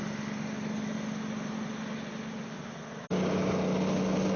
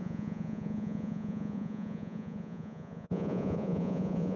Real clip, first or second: first